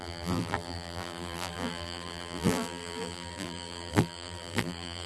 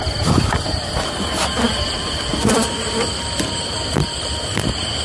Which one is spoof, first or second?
first